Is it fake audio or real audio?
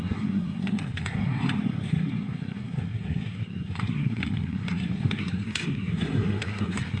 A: fake